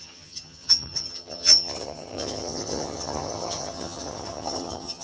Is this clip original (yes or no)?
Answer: no